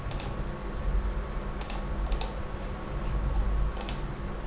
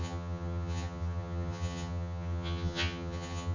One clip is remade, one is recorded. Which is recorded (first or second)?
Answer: first